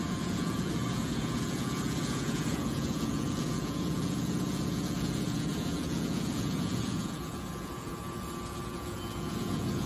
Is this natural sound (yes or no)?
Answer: no